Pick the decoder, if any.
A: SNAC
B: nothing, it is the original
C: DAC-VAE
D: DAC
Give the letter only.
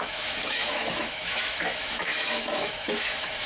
C